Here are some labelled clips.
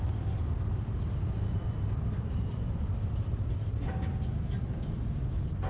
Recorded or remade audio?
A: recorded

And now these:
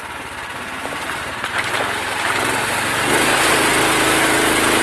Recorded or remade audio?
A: recorded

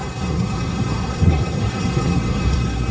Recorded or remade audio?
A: remade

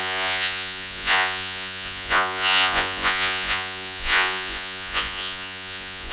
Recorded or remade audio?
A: remade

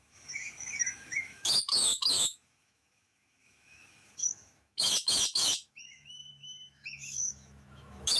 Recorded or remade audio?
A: remade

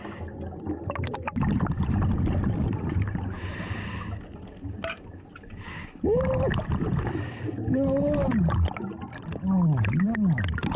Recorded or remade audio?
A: recorded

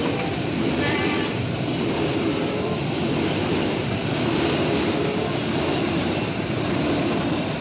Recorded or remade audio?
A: remade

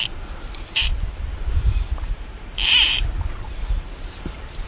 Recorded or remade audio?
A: remade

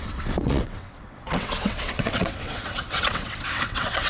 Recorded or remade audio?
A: remade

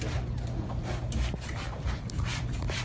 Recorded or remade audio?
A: recorded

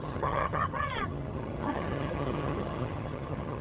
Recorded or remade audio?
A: remade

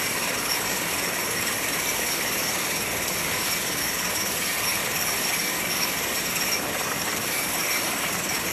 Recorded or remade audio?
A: remade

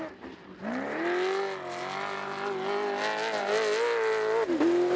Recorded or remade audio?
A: recorded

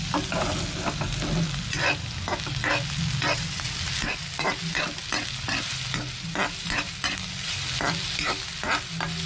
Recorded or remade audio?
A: recorded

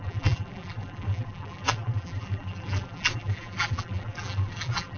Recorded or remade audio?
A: remade